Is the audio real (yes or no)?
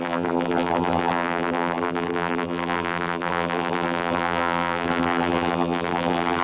no